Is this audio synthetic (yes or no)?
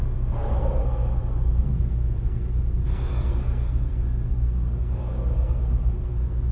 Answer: yes